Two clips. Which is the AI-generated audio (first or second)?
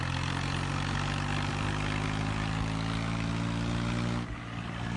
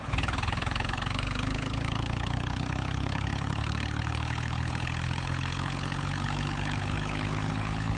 second